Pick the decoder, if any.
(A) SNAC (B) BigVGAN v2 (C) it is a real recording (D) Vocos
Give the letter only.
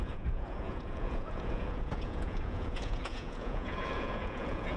D